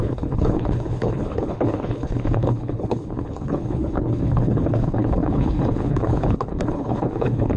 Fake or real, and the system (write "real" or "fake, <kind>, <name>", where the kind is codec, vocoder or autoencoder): fake, codec, HILCodec